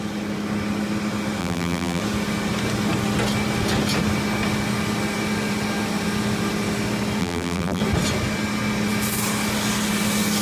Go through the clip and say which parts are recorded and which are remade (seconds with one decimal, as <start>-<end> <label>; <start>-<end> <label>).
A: 0.0-1.4 recorded; 1.4-2.0 remade; 2.0-7.2 recorded; 7.2-7.8 remade; 7.8-10.4 recorded